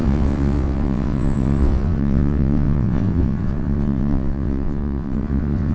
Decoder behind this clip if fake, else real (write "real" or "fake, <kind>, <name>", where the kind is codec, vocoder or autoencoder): fake, vocoder, WaveNeXt